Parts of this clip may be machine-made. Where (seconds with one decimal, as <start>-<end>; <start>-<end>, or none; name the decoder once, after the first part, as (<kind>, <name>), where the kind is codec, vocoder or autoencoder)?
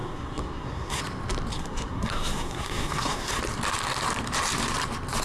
0.0-1.0 (codec, SNAC); 1.5-3.4